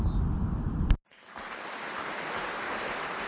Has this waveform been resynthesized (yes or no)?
no